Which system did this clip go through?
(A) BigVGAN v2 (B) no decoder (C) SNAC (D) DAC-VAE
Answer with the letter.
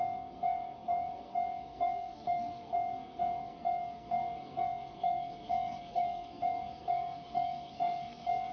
C